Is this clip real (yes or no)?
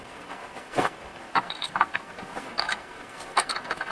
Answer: no